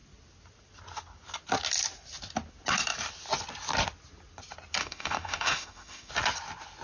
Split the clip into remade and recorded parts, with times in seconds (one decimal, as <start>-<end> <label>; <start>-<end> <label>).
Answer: 0.0-4.8 recorded; 4.8-6.1 remade; 6.1-6.8 recorded